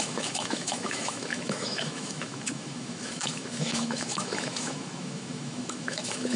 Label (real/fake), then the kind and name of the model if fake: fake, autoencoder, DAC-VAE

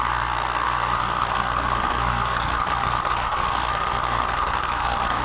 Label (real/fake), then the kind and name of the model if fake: fake, codec, SNAC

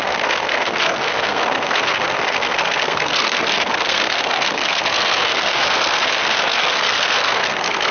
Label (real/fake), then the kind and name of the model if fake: fake, codec, SNAC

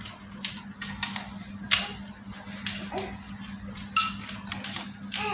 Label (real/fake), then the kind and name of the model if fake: real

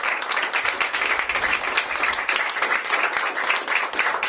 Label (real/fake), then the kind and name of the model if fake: real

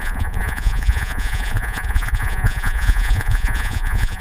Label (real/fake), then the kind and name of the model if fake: fake, vocoder, Vocos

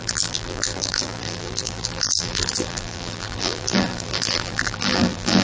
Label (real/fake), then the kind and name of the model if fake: fake, vocoder, BigVGAN v2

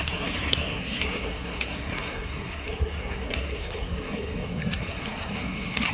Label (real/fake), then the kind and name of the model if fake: fake, codec, SNAC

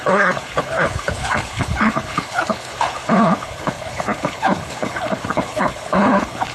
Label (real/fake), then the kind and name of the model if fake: fake, codec, HILCodec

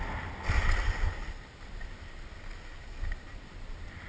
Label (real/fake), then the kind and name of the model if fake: real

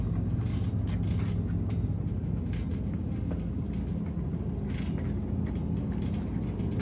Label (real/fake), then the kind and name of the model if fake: real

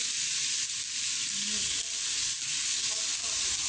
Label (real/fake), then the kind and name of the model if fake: real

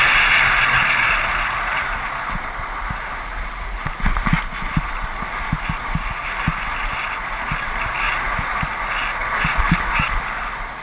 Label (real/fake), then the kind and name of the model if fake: real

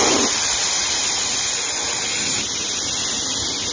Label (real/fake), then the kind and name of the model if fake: real